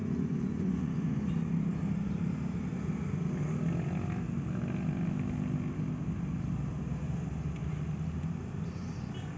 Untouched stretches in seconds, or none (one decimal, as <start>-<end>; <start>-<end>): 1.3-9.4